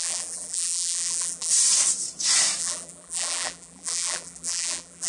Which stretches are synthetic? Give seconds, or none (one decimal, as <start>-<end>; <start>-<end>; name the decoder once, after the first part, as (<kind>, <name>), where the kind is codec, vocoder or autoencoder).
0.0-1.5 (vocoder, BigVGAN v2); 2.6-5.1